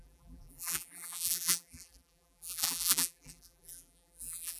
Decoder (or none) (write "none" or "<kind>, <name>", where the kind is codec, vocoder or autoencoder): vocoder, BigVGAN v2